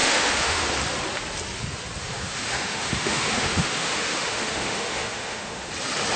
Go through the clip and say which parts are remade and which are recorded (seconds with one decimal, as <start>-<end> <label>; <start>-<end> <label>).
0.0-0.6 remade; 0.6-2.0 recorded; 2.0-5.7 remade; 5.7-6.2 recorded